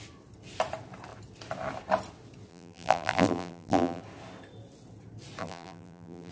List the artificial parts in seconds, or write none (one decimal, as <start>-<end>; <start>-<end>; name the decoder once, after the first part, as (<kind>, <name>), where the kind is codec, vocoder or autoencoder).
2.5-4.0 (vocoder, BigVGAN v2); 5.4-6.3